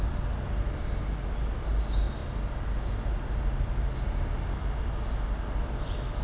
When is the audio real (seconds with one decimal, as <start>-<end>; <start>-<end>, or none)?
0.0-6.2